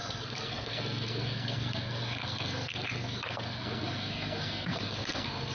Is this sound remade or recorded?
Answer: remade